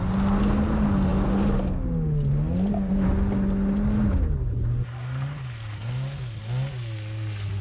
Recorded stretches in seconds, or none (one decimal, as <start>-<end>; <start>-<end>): 0.0-7.6